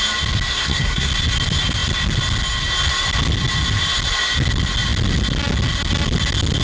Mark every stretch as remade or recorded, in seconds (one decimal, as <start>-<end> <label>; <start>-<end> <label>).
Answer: 0.0-0.5 recorded; 0.5-1.1 remade; 1.1-6.6 recorded